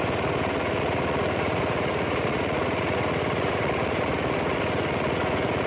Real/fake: fake